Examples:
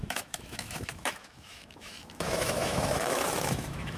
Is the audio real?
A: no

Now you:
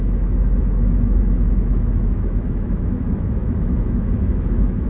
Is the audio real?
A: no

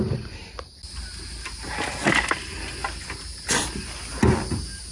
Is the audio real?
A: yes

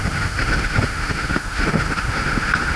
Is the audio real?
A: no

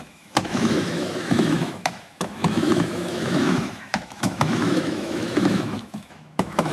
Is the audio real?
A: no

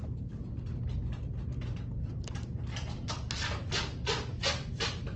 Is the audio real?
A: yes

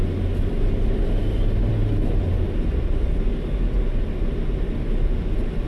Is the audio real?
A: yes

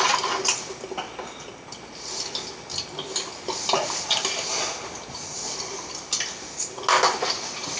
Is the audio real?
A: yes